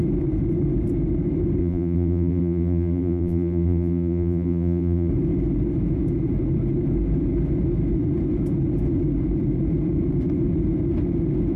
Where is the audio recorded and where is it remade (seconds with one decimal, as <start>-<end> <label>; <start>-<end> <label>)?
0.0-1.6 recorded; 1.6-5.1 remade; 5.1-11.6 recorded